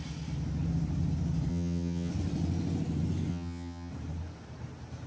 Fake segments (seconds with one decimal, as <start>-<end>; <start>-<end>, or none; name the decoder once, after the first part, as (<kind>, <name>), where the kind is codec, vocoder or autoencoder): 1.5-2.1 (vocoder, HiFi-GAN); 3.3-3.9